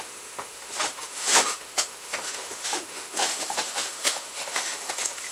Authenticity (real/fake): fake